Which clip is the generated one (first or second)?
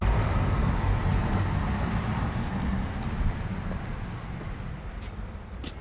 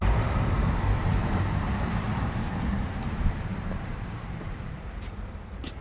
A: second